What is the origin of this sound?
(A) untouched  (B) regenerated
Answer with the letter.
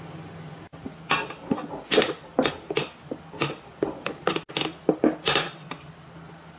A